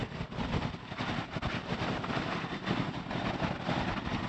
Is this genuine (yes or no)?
yes